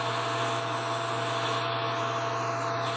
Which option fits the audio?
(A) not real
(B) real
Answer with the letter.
B